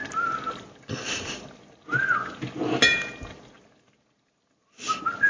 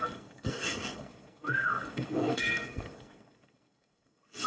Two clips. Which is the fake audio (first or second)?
second